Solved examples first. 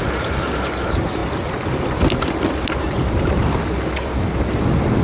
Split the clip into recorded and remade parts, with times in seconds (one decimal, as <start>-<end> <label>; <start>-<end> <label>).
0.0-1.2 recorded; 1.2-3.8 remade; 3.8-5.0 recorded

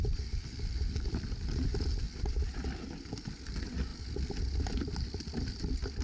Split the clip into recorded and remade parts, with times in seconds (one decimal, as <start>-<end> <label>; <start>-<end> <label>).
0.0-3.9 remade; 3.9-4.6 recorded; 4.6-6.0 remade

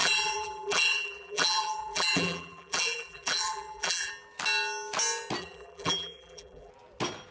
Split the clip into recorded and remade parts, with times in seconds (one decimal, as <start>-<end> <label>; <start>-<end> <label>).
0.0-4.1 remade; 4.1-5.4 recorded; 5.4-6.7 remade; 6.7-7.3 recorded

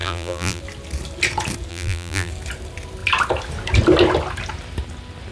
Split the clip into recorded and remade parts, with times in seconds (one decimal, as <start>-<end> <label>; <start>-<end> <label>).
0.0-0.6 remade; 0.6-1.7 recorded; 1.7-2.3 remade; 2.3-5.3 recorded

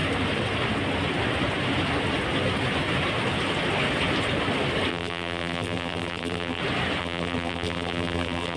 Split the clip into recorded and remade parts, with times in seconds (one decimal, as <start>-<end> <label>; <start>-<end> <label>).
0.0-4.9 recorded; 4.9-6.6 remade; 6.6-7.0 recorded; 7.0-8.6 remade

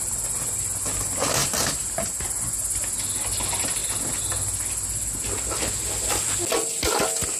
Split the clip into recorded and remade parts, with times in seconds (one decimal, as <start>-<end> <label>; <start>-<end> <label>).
0.0-1.4 recorded; 1.4-2.2 remade; 2.2-7.4 recorded

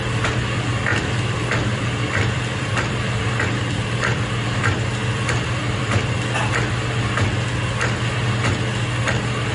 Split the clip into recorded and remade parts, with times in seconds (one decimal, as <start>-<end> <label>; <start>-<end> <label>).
0.0-0.9 recorded; 0.9-4.6 remade; 4.6-5.0 recorded; 5.0-6.1 remade; 6.1-9.5 recorded

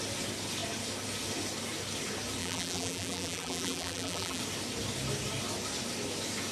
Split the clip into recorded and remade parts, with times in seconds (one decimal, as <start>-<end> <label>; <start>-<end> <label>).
0.0-2.4 recorded; 2.4-4.4 remade; 4.4-6.5 recorded